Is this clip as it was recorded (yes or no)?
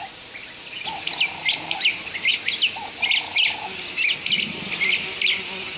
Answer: yes